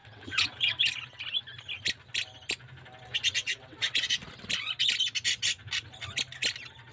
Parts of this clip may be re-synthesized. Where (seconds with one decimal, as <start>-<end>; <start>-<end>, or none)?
0.0-0.8; 3.4-4.2